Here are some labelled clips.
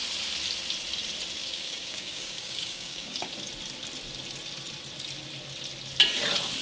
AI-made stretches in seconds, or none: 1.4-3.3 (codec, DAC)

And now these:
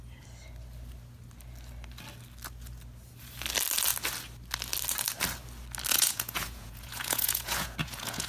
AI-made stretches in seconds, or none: 5.9-8.3 (vocoder, Vocos)

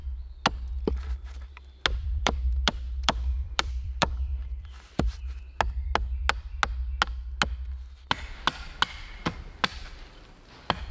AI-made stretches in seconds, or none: 2.0-5.4 (vocoder, BigVGAN v2)